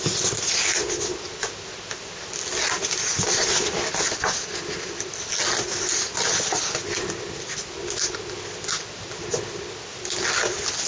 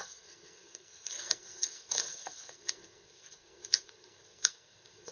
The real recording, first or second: first